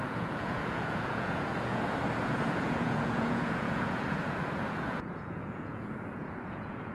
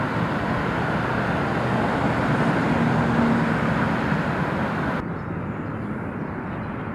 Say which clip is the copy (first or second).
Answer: first